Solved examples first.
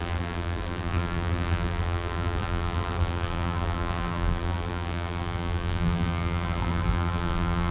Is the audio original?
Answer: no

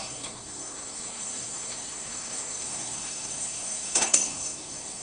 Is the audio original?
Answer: no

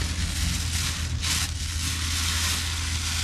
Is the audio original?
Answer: yes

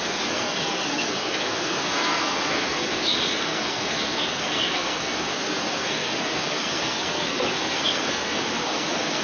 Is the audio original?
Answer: no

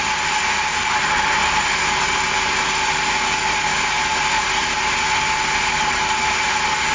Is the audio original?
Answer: yes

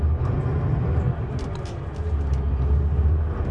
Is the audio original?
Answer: yes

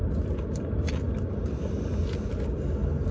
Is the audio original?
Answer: yes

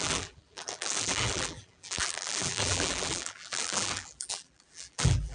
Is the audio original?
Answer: no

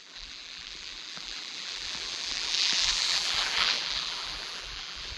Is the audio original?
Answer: no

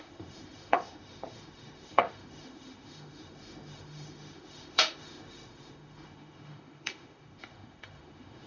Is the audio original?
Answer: no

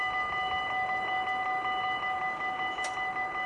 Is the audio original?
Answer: yes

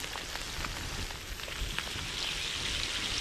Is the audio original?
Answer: yes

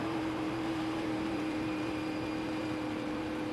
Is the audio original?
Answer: no